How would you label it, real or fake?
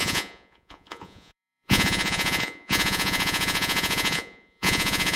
fake